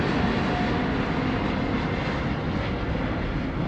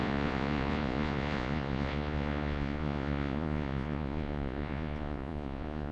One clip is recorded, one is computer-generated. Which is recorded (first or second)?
first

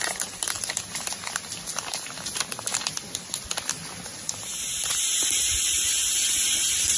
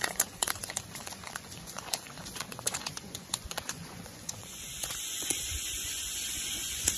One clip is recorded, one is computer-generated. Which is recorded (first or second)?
first